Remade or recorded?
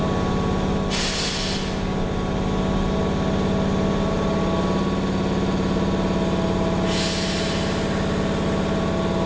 recorded